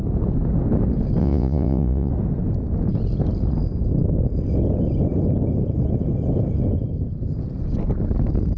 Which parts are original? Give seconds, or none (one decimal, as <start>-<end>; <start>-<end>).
0.0-1.2; 2.1-8.6